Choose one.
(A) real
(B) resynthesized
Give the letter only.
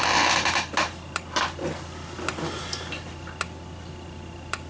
A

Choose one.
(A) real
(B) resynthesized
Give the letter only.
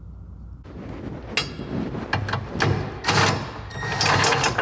A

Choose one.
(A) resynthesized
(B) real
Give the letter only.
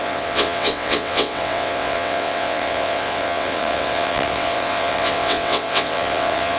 A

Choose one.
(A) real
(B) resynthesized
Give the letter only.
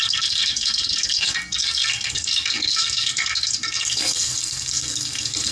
B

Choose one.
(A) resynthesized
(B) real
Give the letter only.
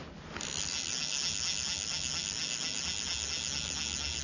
B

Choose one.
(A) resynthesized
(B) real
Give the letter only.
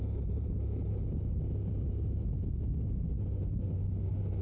B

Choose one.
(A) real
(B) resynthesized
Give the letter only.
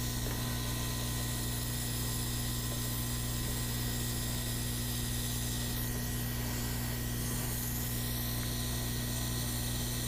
A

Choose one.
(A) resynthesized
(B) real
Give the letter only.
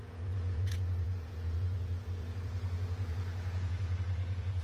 A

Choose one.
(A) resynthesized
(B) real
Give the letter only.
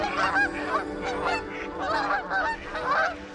B